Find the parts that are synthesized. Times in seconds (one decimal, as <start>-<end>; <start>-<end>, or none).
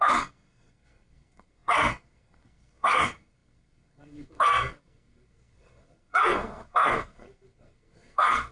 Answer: 0.0-8.5